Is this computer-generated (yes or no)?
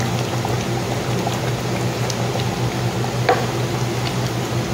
no